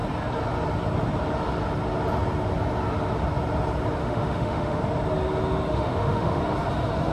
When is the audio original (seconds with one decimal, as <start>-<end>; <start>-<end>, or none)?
0.0-4.0; 4.8-5.7; 6.4-7.1